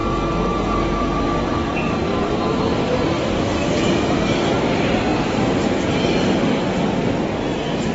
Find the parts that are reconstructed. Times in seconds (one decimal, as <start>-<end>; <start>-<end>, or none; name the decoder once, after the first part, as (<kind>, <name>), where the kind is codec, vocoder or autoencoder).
2.1-4.5 (vocoder, BigVGAN v2); 5.1-6.3